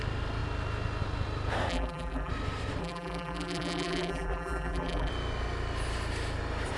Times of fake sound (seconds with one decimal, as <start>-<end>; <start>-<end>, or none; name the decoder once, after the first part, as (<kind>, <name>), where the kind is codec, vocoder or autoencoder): 1.7-2.3 (vocoder, BigVGAN v2); 2.8-5.1